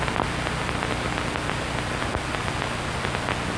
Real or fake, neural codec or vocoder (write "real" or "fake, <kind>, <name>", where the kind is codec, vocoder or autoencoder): real